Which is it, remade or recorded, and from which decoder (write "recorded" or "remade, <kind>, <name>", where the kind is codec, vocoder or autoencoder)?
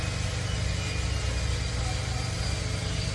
recorded